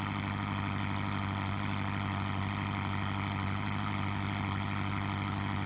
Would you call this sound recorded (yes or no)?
yes